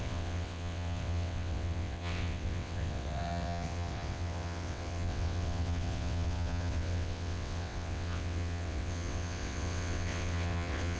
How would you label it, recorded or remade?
remade